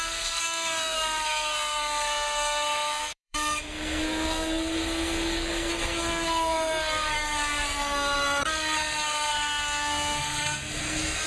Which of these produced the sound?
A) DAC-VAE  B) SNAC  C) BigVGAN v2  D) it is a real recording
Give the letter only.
B